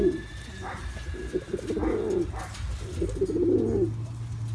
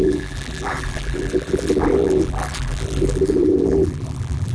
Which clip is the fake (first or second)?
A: second